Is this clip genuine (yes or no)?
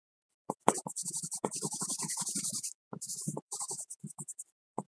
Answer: no